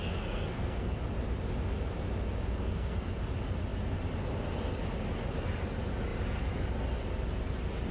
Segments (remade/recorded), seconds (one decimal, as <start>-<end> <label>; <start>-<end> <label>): 0.0-1.0 remade; 1.0-2.6 recorded; 2.6-3.1 remade; 3.1-7.9 recorded